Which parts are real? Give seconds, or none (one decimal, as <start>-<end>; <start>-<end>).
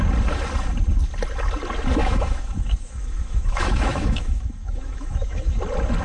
0.0-2.0; 5.6-6.0